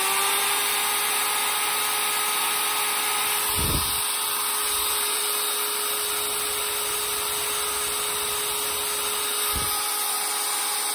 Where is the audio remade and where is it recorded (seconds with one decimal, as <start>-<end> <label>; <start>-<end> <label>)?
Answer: 0.0-4.6 recorded; 4.6-5.2 remade; 5.2-10.9 recorded